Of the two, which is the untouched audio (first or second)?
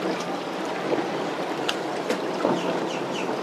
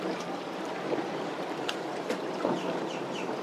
first